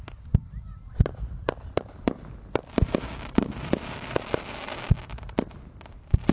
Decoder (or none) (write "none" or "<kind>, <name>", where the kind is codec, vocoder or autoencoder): none